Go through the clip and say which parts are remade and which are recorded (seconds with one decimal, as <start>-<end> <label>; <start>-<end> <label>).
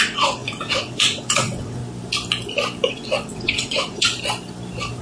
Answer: 0.0-1.8 remade; 1.8-2.9 recorded; 2.9-4.1 remade; 4.1-5.0 recorded